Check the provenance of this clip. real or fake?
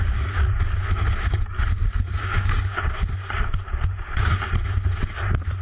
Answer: real